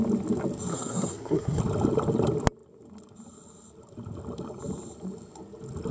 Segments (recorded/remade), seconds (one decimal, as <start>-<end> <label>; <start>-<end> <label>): 0.0-0.7 recorded; 0.7-1.6 remade; 1.6-5.9 recorded